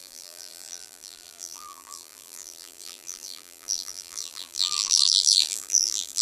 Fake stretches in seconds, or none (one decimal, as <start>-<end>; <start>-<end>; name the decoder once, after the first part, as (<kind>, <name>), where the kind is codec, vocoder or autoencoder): 0.0-6.2 (vocoder, BigVGAN v2)